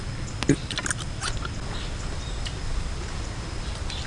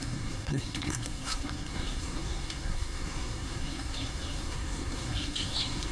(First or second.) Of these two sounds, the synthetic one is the second